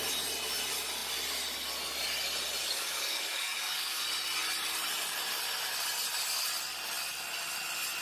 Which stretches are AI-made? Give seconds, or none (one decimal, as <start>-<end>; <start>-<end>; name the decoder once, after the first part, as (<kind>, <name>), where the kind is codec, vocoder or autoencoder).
2.6-4.0 (codec, DAC)